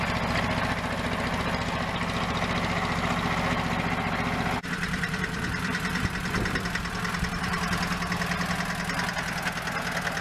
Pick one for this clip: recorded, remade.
recorded